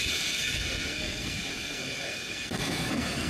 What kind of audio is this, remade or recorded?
remade